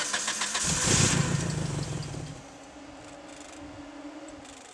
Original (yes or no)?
yes